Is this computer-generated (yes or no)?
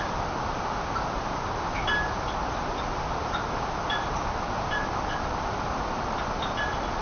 no